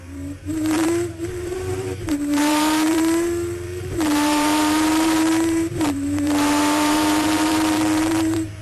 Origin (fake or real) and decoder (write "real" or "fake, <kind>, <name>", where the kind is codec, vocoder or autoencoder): fake, vocoder, BigVGAN v2